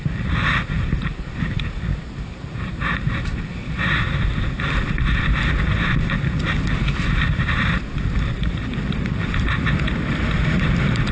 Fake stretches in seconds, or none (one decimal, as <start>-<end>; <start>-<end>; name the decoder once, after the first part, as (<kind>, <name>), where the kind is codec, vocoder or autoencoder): 0.0-3.5 (vocoder, BigVGAN v2); 4.7-11.1